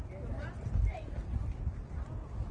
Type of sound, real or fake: real